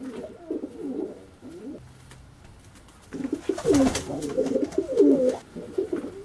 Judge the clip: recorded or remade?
recorded